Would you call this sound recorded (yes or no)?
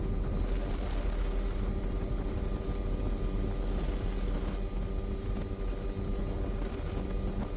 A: yes